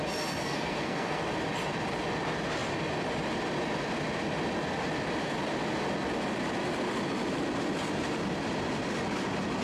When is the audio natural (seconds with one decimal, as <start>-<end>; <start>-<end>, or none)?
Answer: 0.0-0.4; 1.2-9.6